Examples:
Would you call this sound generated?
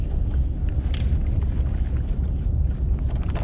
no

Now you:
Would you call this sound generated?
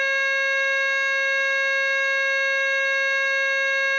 no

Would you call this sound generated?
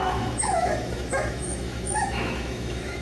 yes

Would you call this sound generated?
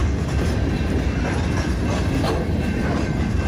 no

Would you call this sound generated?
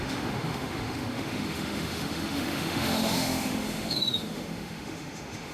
yes